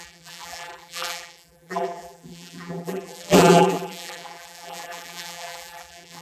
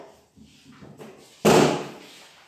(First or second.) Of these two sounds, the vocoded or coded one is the first